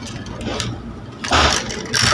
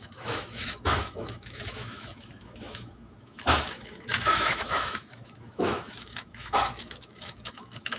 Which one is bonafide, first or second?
first